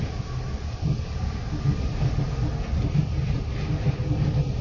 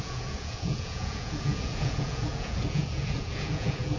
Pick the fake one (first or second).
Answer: second